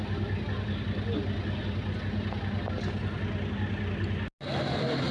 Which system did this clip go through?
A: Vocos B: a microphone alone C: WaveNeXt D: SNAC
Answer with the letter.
B